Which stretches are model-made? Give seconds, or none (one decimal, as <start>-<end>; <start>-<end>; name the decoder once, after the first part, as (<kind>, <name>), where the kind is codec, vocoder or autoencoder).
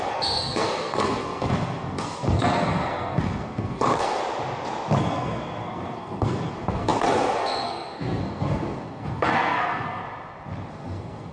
0.0-4.2 (codec, SNAC); 5.0-10.0; 10.7-11.3